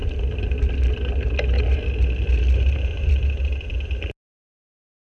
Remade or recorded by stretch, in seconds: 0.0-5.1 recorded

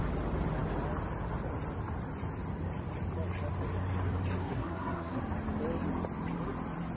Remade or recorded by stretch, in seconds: 0.0-4.4 recorded; 4.4-5.2 remade; 5.2-7.0 recorded

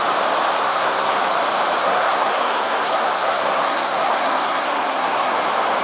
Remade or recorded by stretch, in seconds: 0.0-0.6 recorded; 0.6-1.2 remade; 1.2-1.8 recorded; 1.8-5.3 remade; 5.3-5.8 recorded

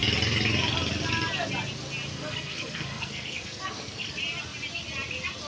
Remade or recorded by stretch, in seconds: 0.0-2.1 recorded; 2.1-4.1 remade; 4.1-5.5 recorded

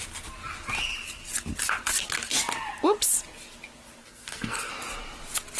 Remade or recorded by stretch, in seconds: 0.0-4.0 recorded; 4.0-4.7 remade; 4.7-5.6 recorded

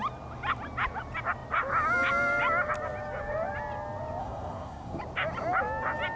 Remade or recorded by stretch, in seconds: 0.0-4.2 recorded; 4.2-5.0 remade; 5.0-6.2 recorded